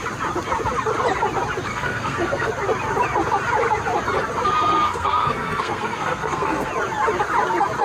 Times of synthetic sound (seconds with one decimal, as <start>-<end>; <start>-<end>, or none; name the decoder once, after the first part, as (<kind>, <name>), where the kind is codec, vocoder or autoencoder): 1.7-2.5 (codec, SNAC); 4.7-6.7